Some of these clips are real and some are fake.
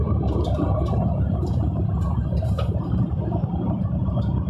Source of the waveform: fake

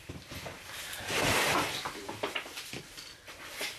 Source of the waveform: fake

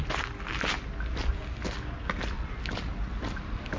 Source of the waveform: real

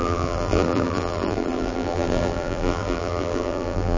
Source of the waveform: fake